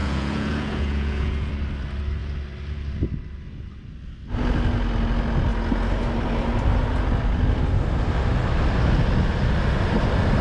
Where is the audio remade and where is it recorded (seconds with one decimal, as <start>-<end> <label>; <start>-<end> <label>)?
0.0-1.5 remade; 1.5-10.4 recorded